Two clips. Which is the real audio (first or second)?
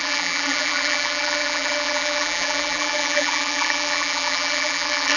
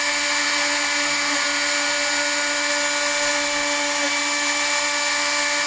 second